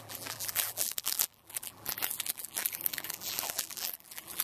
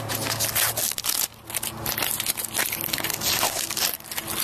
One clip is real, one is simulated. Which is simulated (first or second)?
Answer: first